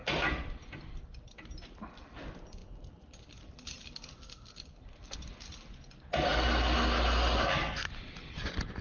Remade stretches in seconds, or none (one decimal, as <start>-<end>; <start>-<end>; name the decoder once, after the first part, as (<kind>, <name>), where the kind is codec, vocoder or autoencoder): none